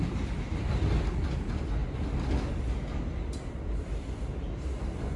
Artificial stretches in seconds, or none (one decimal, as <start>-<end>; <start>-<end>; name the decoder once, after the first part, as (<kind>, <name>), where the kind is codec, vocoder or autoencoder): none